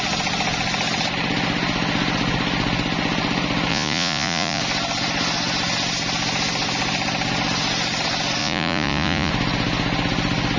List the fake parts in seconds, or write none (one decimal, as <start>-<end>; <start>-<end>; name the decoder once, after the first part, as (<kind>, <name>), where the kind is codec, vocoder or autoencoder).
3.7-4.6 (vocoder, Vocos); 8.4-9.3

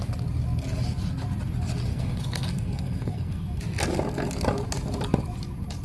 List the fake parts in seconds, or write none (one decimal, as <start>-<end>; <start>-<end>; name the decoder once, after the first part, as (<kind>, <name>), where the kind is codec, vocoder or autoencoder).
1.9-3.6 (codec, SNAC)